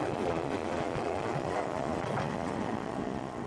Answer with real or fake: fake